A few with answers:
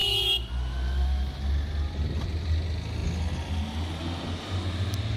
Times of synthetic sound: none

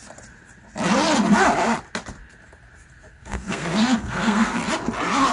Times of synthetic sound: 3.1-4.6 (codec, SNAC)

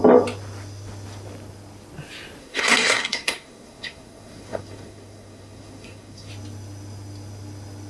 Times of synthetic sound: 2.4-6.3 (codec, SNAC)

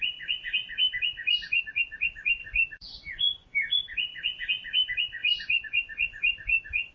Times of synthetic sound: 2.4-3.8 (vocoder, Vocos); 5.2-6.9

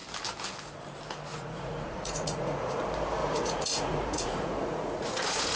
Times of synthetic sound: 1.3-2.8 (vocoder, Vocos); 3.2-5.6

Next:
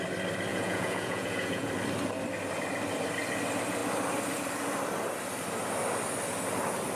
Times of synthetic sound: 0.5-1.7 (vocoder, Vocos)